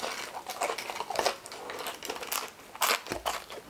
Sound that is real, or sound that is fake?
real